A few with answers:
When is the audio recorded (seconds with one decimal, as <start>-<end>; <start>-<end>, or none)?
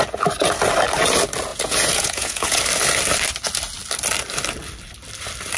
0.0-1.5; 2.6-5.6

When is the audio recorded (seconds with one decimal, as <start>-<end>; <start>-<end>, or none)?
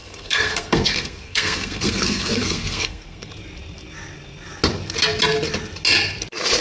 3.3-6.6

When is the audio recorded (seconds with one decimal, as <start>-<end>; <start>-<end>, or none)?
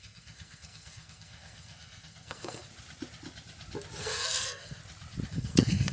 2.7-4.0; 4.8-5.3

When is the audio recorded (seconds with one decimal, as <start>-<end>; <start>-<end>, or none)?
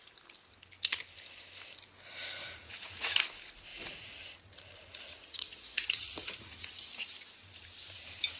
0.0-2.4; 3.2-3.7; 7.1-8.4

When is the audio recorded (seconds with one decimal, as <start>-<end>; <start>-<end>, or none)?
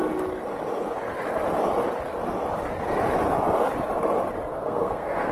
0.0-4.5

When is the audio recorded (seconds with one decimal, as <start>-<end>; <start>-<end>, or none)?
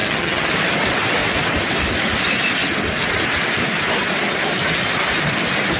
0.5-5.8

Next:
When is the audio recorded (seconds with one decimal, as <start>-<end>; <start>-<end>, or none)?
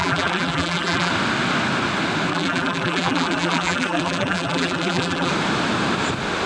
1.1-2.3; 5.3-6.5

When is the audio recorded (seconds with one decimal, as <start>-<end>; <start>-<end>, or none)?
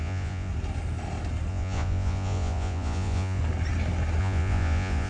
0.5-1.5; 3.4-4.2